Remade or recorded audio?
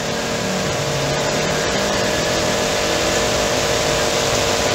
remade